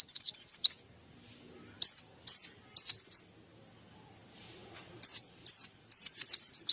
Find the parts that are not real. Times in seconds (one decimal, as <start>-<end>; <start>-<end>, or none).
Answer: none